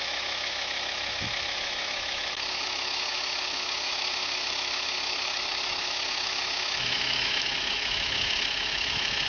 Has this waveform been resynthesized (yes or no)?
yes